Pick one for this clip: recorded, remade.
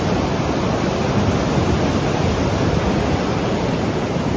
recorded